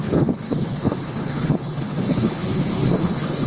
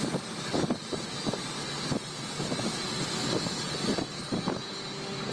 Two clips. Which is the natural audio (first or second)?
second